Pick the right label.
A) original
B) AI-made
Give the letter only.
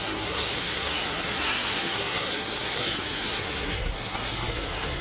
B